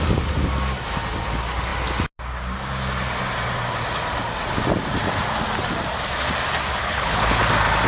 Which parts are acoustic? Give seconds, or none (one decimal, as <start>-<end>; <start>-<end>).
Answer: 0.0-6.8; 7.4-7.9